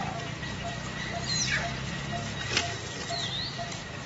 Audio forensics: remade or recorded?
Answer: recorded